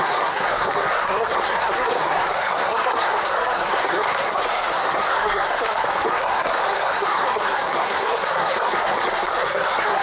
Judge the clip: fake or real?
fake